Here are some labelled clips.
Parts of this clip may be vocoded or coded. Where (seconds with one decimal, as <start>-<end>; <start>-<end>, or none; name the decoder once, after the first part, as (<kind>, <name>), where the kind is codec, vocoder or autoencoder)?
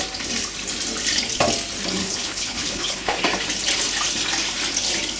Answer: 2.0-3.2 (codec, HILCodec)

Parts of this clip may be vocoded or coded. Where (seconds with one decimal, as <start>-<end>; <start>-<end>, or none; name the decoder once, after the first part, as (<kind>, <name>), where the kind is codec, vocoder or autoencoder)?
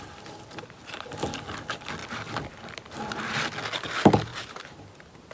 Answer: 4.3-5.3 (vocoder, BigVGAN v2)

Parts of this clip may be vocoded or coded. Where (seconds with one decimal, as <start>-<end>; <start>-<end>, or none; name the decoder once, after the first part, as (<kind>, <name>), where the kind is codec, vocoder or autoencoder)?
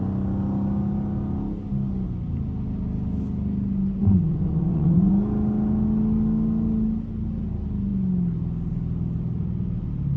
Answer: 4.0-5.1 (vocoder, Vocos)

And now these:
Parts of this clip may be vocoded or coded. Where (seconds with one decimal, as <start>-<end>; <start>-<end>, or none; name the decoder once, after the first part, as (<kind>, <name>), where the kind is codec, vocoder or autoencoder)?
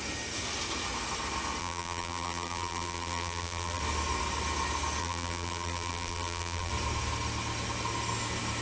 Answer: 1.6-3.8 (vocoder, BigVGAN v2); 5.0-6.7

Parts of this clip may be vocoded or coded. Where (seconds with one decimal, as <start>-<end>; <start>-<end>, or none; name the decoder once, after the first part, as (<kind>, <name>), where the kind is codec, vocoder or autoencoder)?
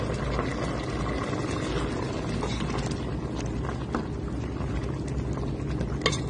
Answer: none